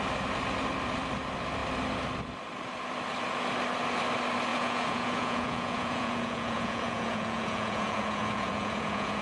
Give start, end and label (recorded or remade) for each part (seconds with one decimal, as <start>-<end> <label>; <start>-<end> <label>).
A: 0.0-4.5 recorded; 4.5-9.2 remade